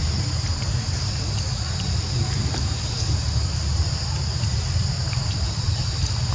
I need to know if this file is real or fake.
real